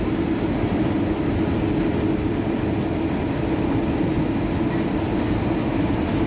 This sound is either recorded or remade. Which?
recorded